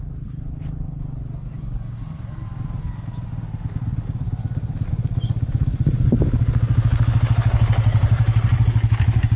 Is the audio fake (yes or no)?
no